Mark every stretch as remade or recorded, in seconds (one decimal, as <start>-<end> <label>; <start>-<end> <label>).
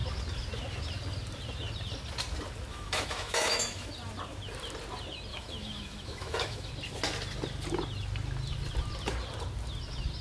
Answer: 0.0-2.7 recorded; 2.7-3.9 remade; 3.9-5.3 recorded; 5.3-6.7 remade; 6.7-10.2 recorded